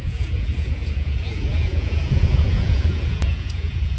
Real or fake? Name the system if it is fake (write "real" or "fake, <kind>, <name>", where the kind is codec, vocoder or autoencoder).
fake, vocoder, Vocos